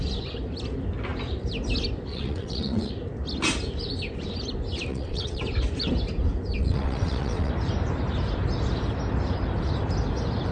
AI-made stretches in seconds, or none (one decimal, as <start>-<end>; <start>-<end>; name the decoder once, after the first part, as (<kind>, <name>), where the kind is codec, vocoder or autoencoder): 2.1-2.9 (vocoder, WaveNeXt); 4.9-5.4; 6.6-7.5